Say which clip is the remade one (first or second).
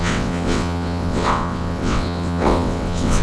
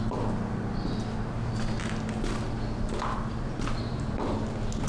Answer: first